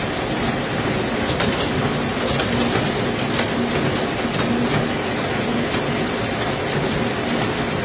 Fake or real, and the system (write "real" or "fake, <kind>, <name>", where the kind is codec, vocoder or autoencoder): real